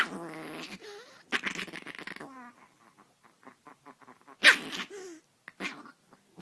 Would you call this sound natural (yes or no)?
yes